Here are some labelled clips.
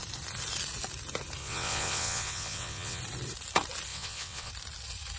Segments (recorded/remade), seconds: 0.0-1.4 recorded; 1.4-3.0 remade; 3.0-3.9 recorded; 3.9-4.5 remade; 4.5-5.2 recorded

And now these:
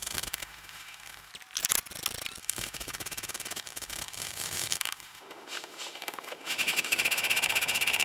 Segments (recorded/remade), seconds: 0.0-1.3 remade; 1.3-2.4 recorded; 2.4-8.0 remade